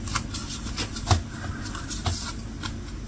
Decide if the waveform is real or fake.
real